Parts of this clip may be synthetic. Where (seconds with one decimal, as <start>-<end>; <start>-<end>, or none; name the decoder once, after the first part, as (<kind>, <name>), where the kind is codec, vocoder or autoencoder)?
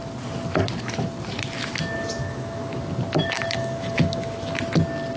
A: 2.2-2.8 (autoencoder, DAC-VAE); 3.2-4.6